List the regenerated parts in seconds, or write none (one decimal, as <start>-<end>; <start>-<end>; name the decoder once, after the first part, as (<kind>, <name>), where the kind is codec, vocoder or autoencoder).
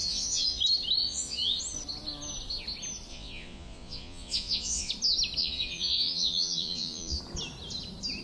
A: 0.0-0.6 (vocoder, Vocos); 1.0-1.6; 3.1-4.9; 5.4-7.2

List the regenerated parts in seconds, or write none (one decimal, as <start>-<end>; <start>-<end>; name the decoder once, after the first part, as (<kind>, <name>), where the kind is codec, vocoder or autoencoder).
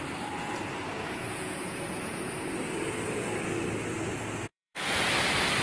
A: 0.9-2.3 (vocoder, Vocos); 4.5-5.1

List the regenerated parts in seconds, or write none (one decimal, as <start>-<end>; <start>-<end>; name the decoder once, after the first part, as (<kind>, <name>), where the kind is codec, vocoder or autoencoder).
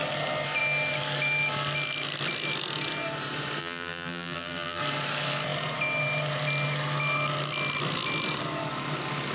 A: 3.6-4.8 (vocoder, BigVGAN v2)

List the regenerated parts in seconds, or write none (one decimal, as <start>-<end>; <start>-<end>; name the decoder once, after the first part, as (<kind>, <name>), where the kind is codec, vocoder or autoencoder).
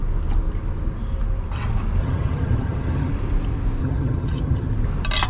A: 2.0-3.1 (vocoder, HiFi-GAN); 3.8-4.7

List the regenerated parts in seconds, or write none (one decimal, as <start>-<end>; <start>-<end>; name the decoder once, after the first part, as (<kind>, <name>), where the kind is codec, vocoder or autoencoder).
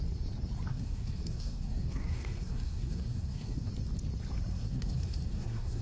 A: 0.7-3.7 (codec, SNAC); 4.5-5.8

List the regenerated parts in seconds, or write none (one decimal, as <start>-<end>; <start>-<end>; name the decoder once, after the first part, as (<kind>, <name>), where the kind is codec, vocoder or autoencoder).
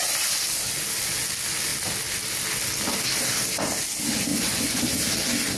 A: 4.3-4.9 (vocoder, Vocos)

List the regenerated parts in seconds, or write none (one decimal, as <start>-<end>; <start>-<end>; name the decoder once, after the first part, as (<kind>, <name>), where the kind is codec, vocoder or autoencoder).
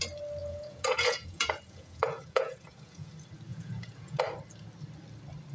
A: 0.4-3.1 (vocoder, Vocos); 3.5-4.2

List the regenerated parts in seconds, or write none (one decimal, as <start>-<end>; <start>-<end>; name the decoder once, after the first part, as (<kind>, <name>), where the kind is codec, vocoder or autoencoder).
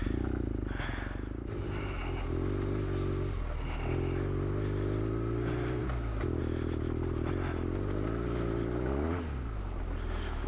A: none